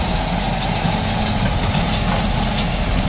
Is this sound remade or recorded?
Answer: recorded